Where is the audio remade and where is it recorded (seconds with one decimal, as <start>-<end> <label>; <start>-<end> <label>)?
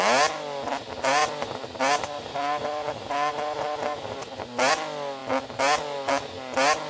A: 0.0-6.9 recorded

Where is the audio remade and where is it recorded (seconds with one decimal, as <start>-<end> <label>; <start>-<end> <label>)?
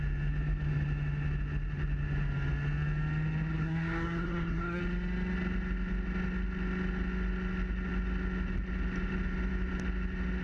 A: 0.0-3.6 recorded; 3.6-4.8 remade; 4.8-10.4 recorded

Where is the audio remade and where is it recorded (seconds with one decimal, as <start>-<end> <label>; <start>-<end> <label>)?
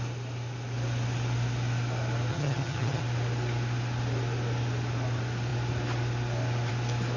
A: 0.0-2.3 recorded; 2.3-3.0 remade; 3.0-7.2 recorded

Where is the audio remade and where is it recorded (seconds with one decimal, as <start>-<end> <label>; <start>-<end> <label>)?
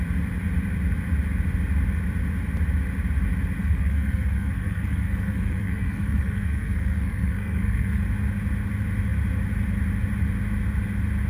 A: 0.0-3.6 recorded; 3.6-8.0 remade; 8.0-11.3 recorded